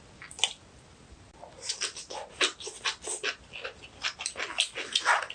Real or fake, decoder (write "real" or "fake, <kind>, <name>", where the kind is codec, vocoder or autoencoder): real